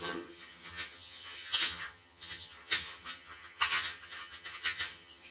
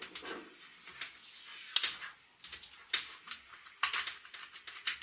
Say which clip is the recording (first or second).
second